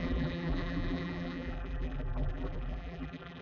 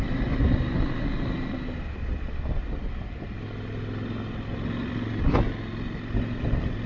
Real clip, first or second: second